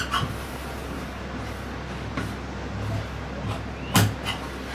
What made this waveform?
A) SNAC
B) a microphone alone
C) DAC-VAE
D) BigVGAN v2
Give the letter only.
B